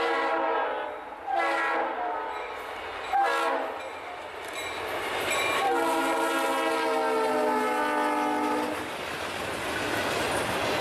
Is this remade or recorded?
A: recorded